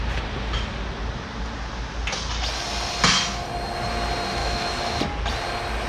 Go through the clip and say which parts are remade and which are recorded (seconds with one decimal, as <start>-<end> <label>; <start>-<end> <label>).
0.0-4.4 recorded; 4.4-5.0 remade; 5.0-5.9 recorded